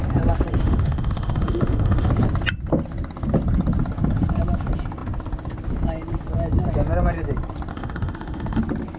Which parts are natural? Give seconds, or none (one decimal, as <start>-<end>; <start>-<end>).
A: 0.0-0.6; 2.1-7.7; 8.6-9.0

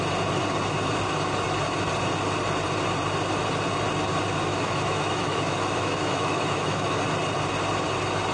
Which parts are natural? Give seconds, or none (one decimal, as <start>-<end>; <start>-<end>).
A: 0.0-4.5; 7.0-8.3